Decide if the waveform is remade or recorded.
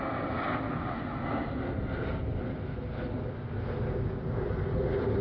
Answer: recorded